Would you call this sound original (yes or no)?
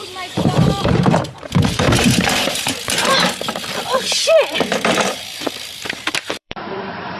no